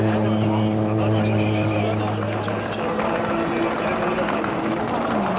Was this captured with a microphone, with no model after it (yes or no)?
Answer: yes